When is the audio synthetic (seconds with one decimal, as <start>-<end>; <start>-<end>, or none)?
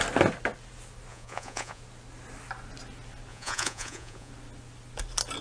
1.1-1.8; 3.3-4.3